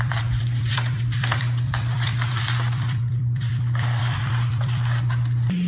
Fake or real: fake